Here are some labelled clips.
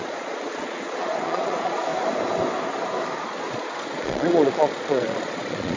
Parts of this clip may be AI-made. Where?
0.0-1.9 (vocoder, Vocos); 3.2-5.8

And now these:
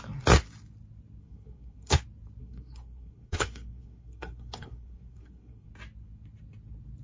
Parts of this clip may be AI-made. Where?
1.2-2.0 (codec, SNAC); 2.4-5.7

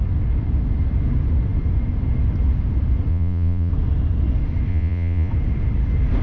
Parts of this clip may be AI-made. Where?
3.1-3.7 (vocoder, Vocos); 4.7-5.3

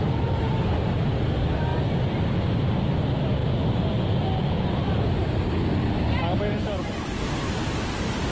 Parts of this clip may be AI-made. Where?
none

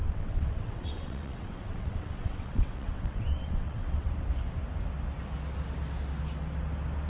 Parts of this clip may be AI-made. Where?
0.0-4.1 (vocoder, WaveNeXt)

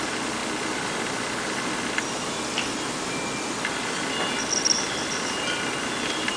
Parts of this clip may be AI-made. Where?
none